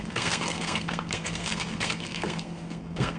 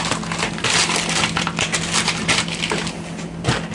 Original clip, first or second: second